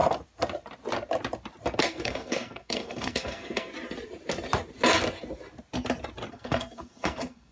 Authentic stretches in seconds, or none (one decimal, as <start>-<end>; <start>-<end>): 0.0-1.8; 3.7-6.3